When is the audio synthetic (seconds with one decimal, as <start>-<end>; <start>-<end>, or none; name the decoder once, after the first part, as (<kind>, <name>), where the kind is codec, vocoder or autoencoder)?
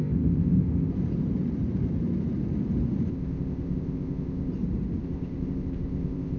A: 0.0-0.9 (codec, ZipCodec); 3.1-4.5; 5.0-6.4